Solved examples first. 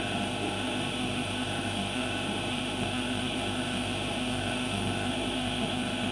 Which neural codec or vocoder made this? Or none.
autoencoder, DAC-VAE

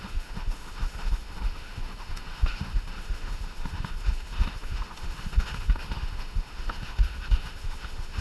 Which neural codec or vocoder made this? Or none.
autoencoder, DAC-VAE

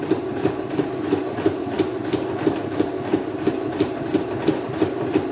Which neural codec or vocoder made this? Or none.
vocoder, BigVGAN v2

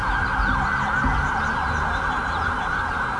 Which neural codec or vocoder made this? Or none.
none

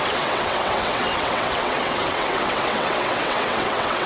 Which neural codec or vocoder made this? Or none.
vocoder, WaveNeXt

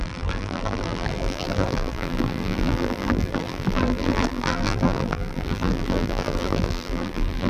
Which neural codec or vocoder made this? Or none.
vocoder, BigVGAN v2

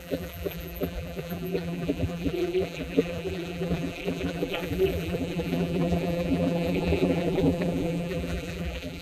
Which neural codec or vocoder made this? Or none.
vocoder, BigVGAN v2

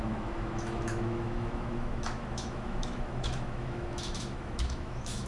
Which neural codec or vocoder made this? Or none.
autoencoder, DAC-VAE